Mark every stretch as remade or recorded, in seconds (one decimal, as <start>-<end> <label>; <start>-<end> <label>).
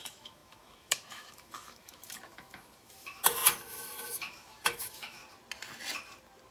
0.0-5.2 remade; 5.2-6.5 recorded